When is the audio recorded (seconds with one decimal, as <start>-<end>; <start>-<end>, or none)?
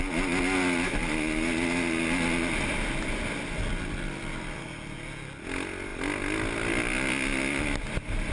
0.0-8.3